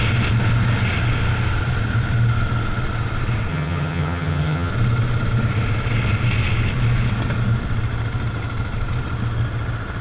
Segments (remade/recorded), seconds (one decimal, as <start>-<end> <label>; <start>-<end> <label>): 0.0-3.5 recorded; 3.5-4.7 remade; 4.7-10.0 recorded